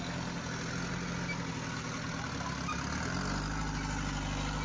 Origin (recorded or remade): recorded